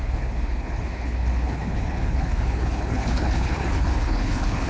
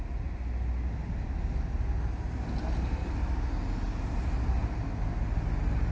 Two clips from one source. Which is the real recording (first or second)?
second